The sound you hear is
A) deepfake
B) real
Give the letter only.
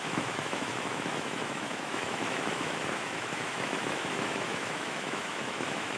A